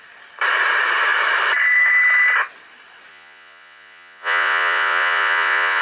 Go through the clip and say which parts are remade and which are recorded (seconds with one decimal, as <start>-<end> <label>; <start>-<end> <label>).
0.0-3.1 recorded; 3.1-5.8 remade